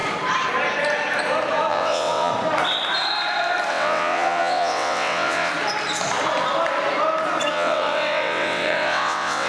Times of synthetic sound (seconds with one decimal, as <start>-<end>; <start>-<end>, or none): 1.7-2.3; 3.7-5.5; 7.5-9.5